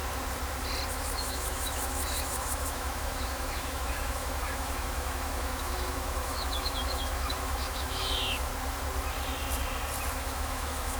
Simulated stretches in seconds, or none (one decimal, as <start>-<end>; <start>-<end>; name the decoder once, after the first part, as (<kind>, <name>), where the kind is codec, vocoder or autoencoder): 0.9-8.5 (autoencoder, DAC-VAE); 10.1-11.0